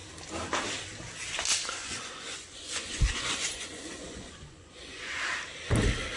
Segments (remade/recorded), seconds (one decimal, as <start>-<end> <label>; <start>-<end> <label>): 0.0-1.5 recorded; 1.5-5.2 remade; 5.2-6.2 recorded

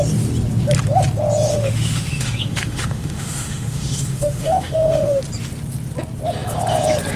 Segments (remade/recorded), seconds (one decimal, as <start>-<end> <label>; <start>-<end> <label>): 0.0-1.5 recorded; 1.5-5.2 remade; 5.2-7.2 recorded

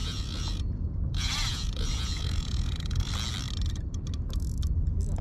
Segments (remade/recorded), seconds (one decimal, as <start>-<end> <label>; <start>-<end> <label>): 0.0-3.1 remade; 3.1-5.2 recorded

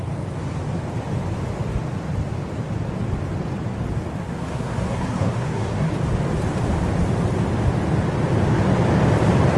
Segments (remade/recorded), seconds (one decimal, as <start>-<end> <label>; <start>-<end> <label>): 0.0-4.2 recorded; 4.2-5.9 remade; 5.9-9.6 recorded

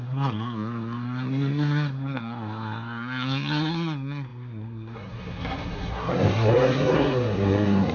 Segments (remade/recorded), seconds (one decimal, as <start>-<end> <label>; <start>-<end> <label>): 0.0-7.9 remade

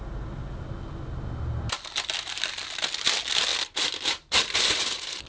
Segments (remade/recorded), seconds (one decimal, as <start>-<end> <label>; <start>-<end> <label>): 0.0-5.3 recorded

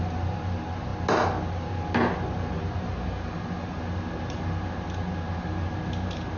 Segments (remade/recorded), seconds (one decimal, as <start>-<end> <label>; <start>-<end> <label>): 0.0-6.4 recorded

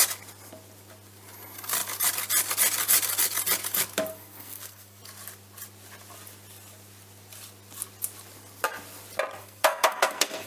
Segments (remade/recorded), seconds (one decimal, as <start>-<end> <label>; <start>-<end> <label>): 0.0-4.1 recorded; 4.1-5.0 remade; 5.0-9.4 recorded; 9.4-10.5 remade